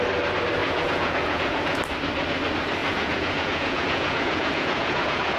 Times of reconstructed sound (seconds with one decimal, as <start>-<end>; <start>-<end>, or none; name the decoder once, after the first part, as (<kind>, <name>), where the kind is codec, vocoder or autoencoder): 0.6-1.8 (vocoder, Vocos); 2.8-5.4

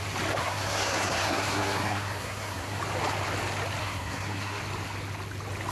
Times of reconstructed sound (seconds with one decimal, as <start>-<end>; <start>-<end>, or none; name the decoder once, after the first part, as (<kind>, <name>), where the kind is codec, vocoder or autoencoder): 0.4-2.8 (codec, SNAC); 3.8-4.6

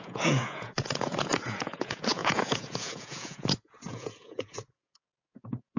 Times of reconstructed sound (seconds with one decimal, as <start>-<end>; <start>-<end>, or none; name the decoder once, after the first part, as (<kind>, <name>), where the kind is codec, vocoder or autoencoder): 0.0-5.8 (vocoder, Vocos)